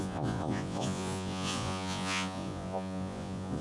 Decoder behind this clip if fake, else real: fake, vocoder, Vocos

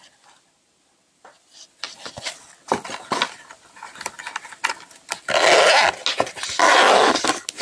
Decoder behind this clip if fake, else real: real